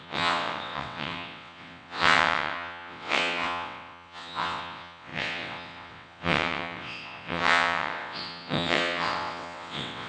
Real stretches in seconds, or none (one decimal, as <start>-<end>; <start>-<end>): none